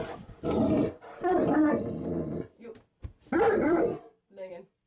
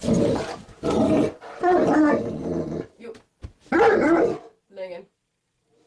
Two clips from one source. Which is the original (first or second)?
second